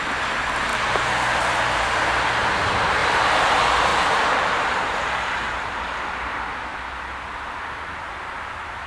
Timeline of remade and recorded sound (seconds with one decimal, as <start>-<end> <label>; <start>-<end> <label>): 0.0-0.7 recorded; 0.7-2.1 remade; 2.1-3.0 recorded; 3.0-3.5 remade; 3.5-3.9 recorded; 3.9-5.8 remade; 5.8-8.9 recorded